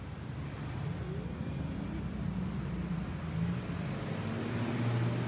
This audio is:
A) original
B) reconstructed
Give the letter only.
A